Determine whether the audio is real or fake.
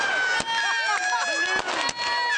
real